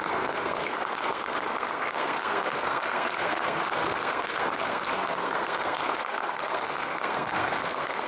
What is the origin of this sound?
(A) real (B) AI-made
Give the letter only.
B